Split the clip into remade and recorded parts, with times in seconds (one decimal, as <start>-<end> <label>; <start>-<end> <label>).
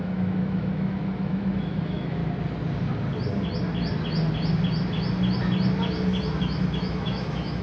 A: 0.0-2.2 remade; 2.2-6.4 recorded; 6.4-7.6 remade